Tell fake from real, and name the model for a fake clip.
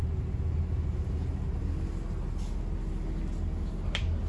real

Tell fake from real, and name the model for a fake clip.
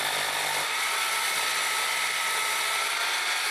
real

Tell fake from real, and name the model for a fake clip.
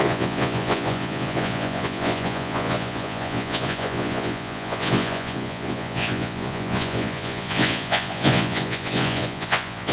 fake, vocoder, Vocos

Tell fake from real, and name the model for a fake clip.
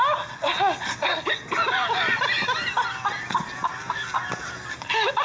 real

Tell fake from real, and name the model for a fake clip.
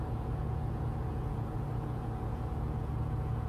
fake, vocoder, Vocos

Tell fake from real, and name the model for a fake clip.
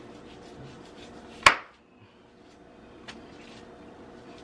real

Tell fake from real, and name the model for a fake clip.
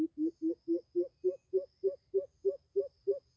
real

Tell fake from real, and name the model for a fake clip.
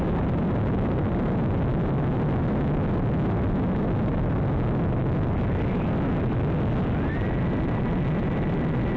real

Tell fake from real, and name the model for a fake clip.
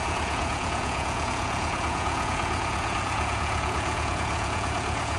fake, vocoder, Vocos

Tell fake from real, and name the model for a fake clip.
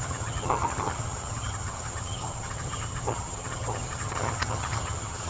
fake, vocoder, HiFi-GAN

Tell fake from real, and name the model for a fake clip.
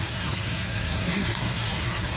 fake, codec, SNAC